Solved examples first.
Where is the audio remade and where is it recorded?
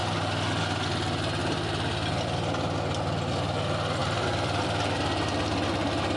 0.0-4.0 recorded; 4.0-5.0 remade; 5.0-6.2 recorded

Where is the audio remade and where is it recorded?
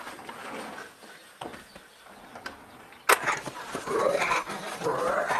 0.0-0.4 remade; 0.4-1.1 recorded; 1.1-1.5 remade; 1.5-3.2 recorded; 3.2-5.4 remade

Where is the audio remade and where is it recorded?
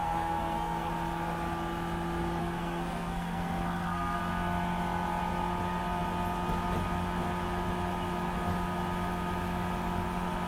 0.0-0.9 remade; 0.9-2.4 recorded; 2.4-4.2 remade; 4.2-10.5 recorded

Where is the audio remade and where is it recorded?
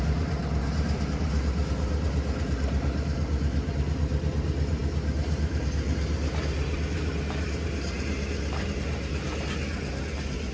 0.0-10.5 remade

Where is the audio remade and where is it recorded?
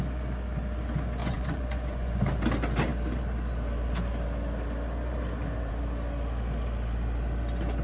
0.0-1.2 recorded; 1.2-2.2 remade; 2.2-7.8 recorded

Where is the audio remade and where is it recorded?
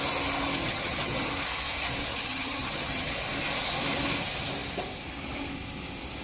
0.0-0.6 recorded; 0.6-1.3 remade; 1.3-2.1 recorded; 2.1-3.1 remade; 3.1-6.2 recorded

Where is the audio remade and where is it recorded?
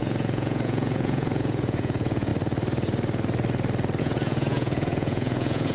0.0-2.3 remade; 2.3-4.0 recorded; 4.0-5.7 remade